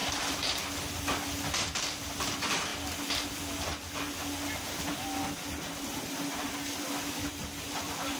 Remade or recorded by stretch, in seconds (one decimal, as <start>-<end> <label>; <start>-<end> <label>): 0.0-2.7 remade; 2.7-7.6 recorded; 7.6-8.2 remade